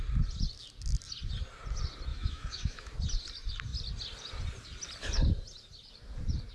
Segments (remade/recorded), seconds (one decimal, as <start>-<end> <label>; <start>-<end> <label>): 0.0-2.1 recorded; 2.1-3.0 remade; 3.0-6.5 recorded